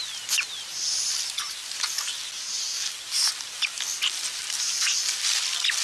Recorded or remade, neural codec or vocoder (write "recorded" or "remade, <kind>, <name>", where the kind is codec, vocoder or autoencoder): recorded